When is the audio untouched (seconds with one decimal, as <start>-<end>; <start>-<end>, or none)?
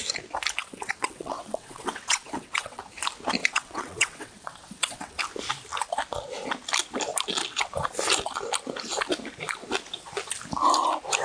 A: 0.0-0.6; 2.8-3.4; 5.2-11.2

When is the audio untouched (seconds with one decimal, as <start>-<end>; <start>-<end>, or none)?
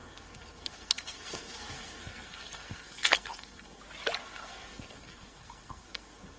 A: 3.8-4.2